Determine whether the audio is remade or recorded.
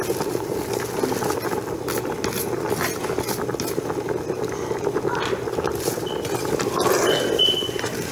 recorded